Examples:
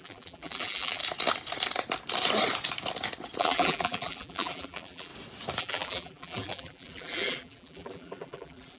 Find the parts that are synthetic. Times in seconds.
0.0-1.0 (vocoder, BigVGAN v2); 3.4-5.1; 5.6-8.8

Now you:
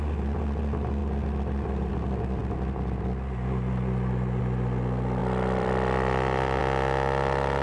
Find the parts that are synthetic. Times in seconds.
1.0-1.9 (vocoder, BigVGAN v2); 5.2-6.6

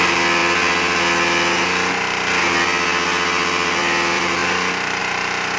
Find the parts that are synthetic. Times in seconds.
0.0-0.4 (vocoder, BigVGAN v2); 3.8-5.6

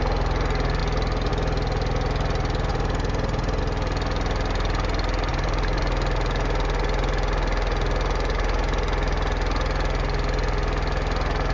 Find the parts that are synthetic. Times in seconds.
2.7-3.6 (vocoder, BigVGAN v2); 5.3-5.8

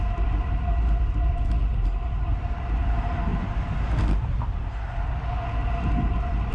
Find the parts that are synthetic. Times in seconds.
none

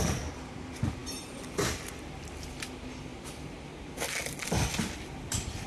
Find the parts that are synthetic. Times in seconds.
0.0-3.1 (vocoder, BigVGAN v2); 3.9-5.7

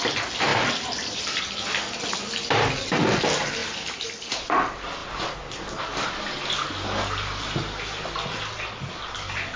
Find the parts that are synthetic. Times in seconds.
0.5-1.4 (vocoder, BigVGAN v2)

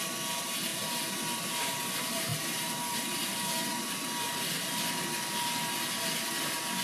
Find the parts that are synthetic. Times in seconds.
2.3-4.9 (vocoder, BigVGAN v2)